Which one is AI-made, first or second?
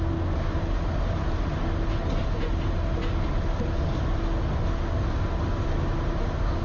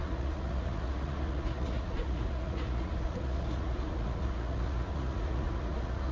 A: second